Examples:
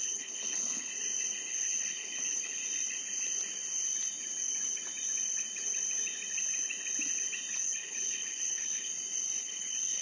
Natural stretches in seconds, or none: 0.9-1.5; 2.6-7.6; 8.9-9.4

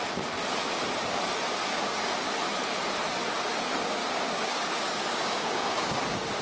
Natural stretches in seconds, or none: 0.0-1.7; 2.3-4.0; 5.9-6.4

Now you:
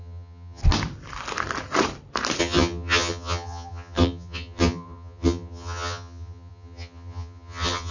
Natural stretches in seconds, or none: 0.6-2.4

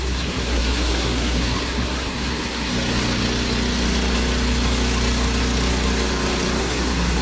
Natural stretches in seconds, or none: 2.7-6.6

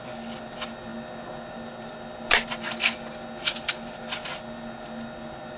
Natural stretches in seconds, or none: 0.0-5.6

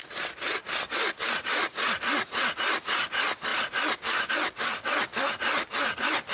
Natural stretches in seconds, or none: 0.0-6.3